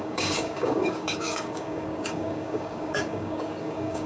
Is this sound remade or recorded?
remade